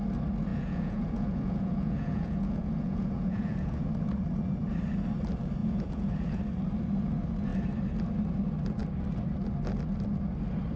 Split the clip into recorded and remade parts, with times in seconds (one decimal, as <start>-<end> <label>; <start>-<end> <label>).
0.0-0.5 recorded; 0.5-3.9 remade; 3.9-5.6 recorded; 5.6-6.4 remade; 6.4-10.8 recorded